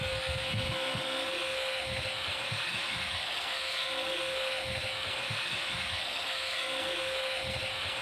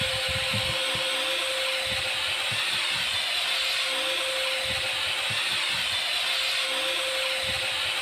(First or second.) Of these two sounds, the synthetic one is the first